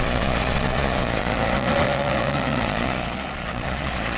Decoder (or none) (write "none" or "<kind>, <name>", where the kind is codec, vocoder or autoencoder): vocoder, Vocos